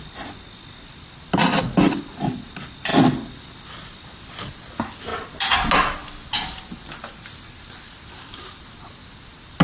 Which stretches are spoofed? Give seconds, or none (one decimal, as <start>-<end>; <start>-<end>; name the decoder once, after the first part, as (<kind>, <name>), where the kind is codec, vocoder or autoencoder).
none